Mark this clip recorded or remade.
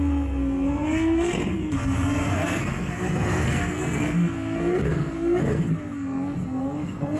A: remade